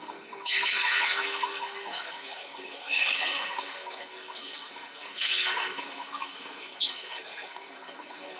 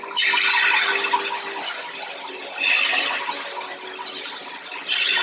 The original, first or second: second